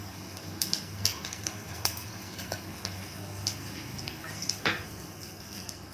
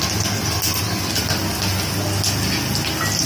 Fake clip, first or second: first